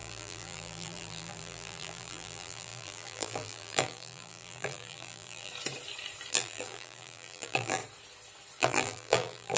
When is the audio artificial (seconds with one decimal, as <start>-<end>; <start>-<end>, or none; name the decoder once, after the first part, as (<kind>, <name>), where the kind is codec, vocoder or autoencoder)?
0.0-5.5 (vocoder, BigVGAN v2); 6.3-7.8; 8.6-9.6